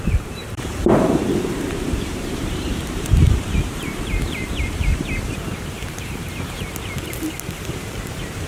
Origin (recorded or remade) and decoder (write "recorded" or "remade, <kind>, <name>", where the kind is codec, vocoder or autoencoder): remade, vocoder, BigVGAN v2